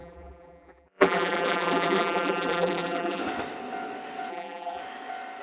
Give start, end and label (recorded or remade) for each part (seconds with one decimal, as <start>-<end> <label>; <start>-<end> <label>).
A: 0.0-3.2 remade; 3.2-4.3 recorded; 4.3-4.8 remade; 4.8-5.4 recorded